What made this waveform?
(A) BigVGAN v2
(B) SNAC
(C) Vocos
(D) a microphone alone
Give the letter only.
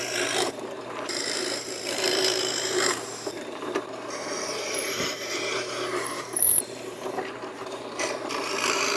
A